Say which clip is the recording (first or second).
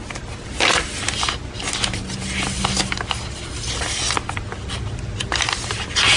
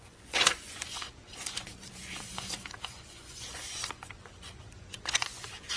first